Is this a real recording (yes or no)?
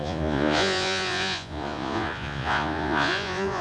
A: no